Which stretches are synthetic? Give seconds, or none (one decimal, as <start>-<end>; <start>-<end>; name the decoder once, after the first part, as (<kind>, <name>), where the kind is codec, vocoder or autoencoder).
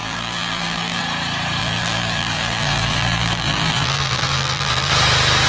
0.0-1.0 (vocoder, BigVGAN v2); 1.6-4.9